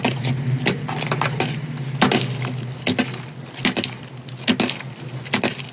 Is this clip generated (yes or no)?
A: no